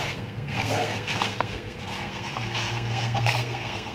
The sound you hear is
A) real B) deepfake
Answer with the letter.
B